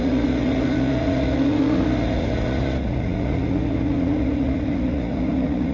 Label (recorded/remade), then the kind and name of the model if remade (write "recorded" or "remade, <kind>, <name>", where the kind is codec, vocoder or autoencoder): remade, vocoder, Vocos